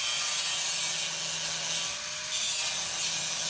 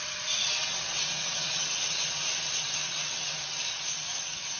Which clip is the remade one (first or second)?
second